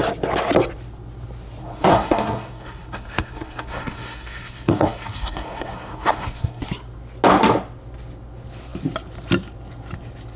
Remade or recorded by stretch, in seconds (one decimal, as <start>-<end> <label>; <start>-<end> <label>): 0.0-1.6 recorded; 1.6-6.6 remade; 6.6-10.4 recorded